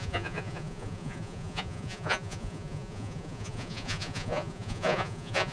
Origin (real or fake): fake